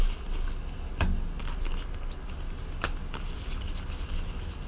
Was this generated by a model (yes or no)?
no